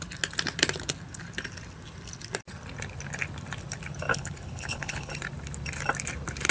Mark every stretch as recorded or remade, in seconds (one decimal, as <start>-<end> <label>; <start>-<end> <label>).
0.0-4.1 recorded; 4.1-5.1 remade; 5.1-6.5 recorded